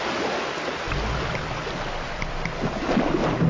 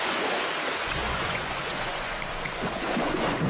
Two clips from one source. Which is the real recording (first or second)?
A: first